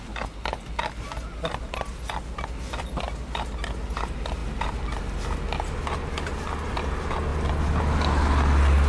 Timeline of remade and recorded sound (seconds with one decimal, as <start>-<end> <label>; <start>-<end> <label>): 0.0-8.9 recorded